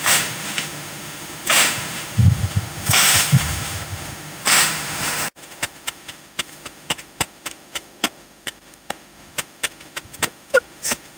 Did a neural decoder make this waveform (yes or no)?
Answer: yes